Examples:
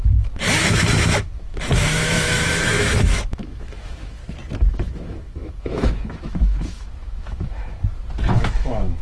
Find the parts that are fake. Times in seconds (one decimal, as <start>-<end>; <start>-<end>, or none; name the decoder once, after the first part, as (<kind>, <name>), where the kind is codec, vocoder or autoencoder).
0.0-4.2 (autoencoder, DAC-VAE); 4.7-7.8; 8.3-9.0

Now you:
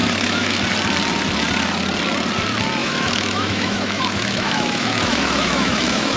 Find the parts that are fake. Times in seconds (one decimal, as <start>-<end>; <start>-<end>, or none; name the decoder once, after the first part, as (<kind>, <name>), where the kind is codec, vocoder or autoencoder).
0.0-0.6 (autoencoder, DAC-VAE); 2.8-6.2

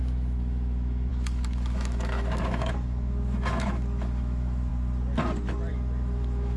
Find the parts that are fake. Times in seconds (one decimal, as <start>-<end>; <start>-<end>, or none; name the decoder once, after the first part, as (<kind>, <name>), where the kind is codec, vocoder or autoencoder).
0.0-4.7 (autoencoder, DAC-VAE); 5.7-6.6

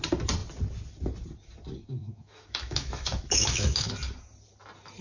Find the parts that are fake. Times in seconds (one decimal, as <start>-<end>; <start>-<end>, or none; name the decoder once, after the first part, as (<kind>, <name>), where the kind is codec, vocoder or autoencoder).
2.0-3.9 (autoencoder, DAC-VAE)

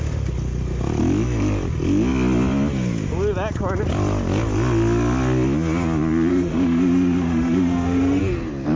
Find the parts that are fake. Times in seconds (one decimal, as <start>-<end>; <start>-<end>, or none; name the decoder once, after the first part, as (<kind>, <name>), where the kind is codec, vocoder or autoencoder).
6.3-8.2 (autoencoder, DAC-VAE)